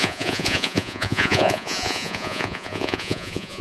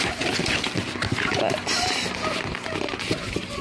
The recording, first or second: second